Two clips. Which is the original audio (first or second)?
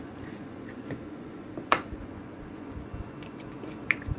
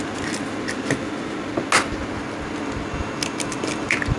second